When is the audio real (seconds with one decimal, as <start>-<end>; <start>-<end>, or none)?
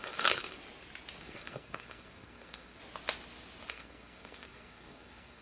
0.6-1.2; 2.8-3.7